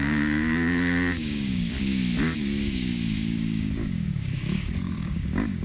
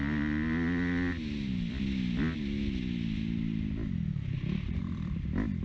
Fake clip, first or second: first